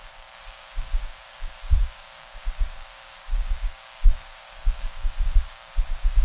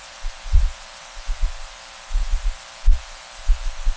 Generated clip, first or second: first